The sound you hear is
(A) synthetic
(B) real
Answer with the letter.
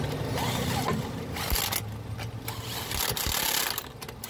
B